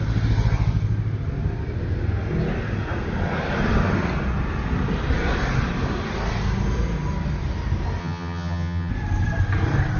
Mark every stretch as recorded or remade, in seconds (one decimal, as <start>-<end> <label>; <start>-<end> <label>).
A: 0.0-8.0 recorded; 8.0-8.9 remade; 8.9-10.0 recorded